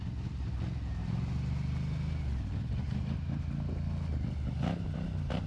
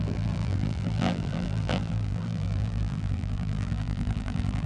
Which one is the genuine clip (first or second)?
first